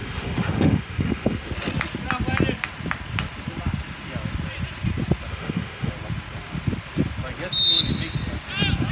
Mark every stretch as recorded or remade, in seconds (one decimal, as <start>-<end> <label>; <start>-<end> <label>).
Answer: 0.0-1.5 remade; 1.5-5.3 recorded; 5.3-5.9 remade; 5.9-8.9 recorded